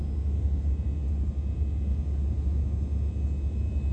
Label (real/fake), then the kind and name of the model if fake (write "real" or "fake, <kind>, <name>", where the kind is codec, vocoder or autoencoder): real